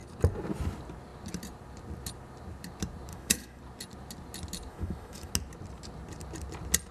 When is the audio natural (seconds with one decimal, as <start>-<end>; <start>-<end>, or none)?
0.0-3.1; 3.6-4.7; 5.3-6.9